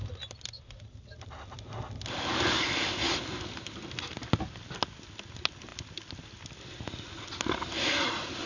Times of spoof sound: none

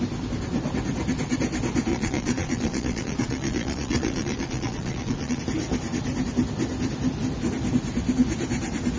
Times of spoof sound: 1.9-5.4 (vocoder, Vocos)

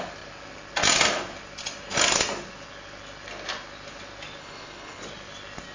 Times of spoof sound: 4.4-5.0 (codec, HILCodec)

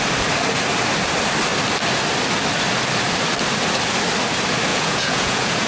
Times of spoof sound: 4.7-5.7 (vocoder, Vocos)

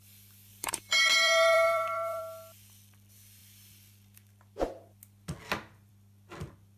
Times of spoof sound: 0.5-2.2 (vocoder, BigVGAN v2)

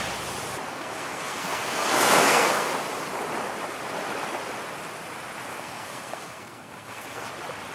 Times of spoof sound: 0.7-2.7 (codec, SNAC); 5.5-7.3

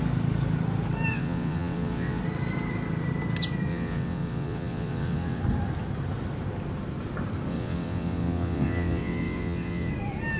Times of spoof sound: 1.1-2.2 (vocoder, WaveNeXt); 3.7-5.4; 7.5-9.9